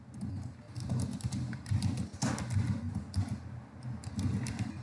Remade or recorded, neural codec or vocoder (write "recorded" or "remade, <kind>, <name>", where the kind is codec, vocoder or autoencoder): recorded